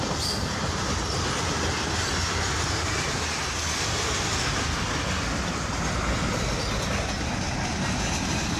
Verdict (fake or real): real